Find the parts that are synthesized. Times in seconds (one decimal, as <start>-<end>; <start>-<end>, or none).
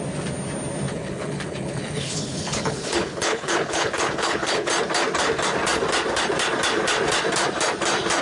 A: 0.9-4.7